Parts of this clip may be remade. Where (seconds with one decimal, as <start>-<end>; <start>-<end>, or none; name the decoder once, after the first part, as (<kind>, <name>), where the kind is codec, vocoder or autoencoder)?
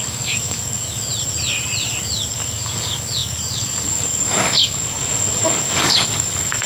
0.0-1.1 (codec, DAC); 2.3-6.7